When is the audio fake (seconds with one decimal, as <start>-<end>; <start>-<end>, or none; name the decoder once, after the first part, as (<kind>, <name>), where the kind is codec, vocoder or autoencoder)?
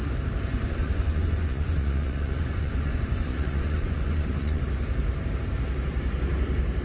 0.5-4.6 (vocoder, Vocos)